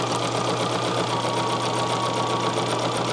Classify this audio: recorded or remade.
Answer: recorded